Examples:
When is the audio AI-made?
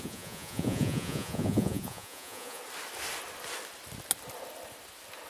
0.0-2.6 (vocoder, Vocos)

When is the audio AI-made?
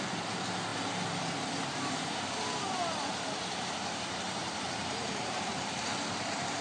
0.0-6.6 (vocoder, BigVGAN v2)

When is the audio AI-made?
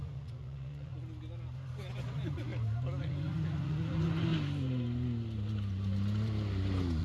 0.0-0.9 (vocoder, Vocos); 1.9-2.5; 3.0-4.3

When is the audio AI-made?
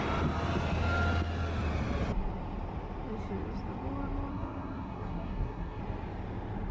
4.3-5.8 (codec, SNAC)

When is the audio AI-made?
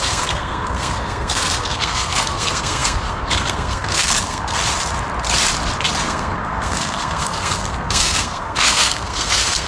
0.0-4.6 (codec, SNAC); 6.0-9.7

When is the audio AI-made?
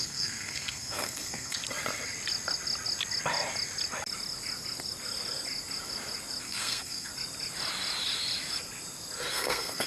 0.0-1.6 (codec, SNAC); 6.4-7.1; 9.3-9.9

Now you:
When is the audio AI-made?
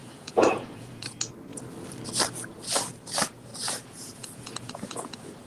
0.0-1.1 (vocoder, Vocos); 3.5-5.5